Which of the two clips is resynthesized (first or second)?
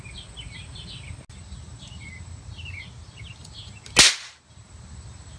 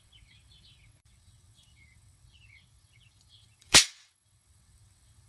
second